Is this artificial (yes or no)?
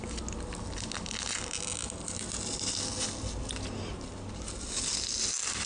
no